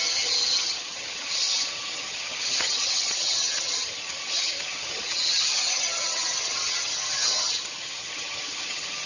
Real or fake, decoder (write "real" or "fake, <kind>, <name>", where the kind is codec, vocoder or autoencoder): fake, vocoder, HiFi-GAN